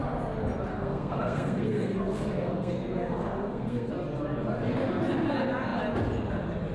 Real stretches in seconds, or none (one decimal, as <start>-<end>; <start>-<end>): 0.0-0.7; 3.9-6.7